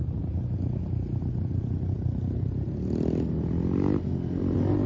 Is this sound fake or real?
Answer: real